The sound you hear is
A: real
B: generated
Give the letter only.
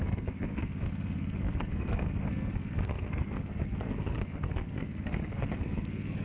B